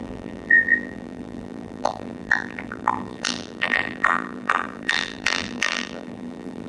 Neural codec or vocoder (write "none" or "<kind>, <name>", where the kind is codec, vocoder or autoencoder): vocoder, BigVGAN v2